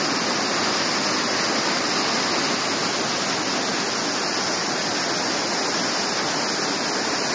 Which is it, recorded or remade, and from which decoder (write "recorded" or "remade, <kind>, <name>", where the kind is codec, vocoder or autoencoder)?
recorded